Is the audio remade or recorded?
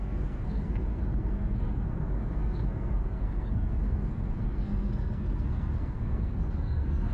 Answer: remade